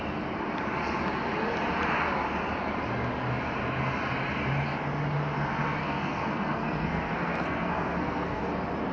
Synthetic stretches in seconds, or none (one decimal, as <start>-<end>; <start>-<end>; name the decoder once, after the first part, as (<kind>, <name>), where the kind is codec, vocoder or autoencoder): 5.8-8.4 (codec, SNAC)